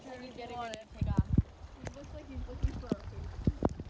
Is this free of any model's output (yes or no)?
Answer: yes